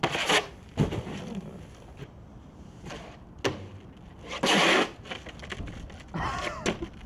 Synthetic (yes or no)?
no